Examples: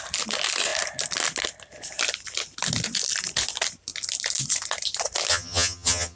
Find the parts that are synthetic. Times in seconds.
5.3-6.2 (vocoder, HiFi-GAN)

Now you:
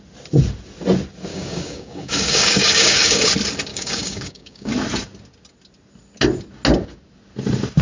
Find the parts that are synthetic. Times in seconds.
1.3-3.3 (codec, DAC); 3.7-4.7